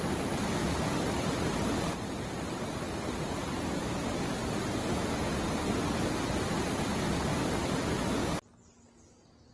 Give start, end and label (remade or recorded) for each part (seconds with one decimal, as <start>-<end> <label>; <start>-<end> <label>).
0.0-0.6 recorded; 0.6-3.6 remade; 3.6-9.5 recorded